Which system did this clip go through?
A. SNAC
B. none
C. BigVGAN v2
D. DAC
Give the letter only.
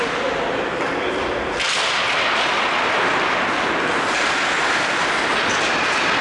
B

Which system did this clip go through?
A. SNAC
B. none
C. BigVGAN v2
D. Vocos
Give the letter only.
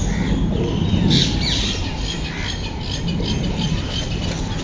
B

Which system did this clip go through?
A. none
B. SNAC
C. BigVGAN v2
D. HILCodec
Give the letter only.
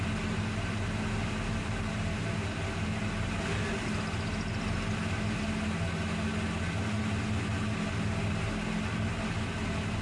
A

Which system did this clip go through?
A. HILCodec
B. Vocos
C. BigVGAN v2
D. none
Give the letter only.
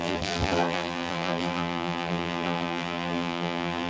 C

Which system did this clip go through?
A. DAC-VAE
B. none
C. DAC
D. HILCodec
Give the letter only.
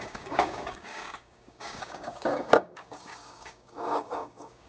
C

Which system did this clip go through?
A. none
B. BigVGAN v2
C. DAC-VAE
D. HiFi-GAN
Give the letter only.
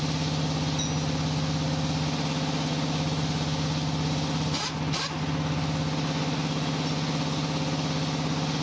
A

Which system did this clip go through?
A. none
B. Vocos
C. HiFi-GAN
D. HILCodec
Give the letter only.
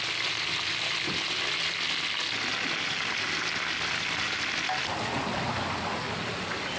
A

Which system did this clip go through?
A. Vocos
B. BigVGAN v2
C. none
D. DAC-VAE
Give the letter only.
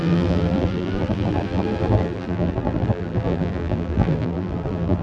B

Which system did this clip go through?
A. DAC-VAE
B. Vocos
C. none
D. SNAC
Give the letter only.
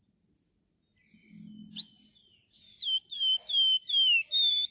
C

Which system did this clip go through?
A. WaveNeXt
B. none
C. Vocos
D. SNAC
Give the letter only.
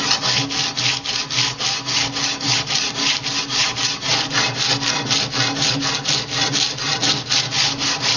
B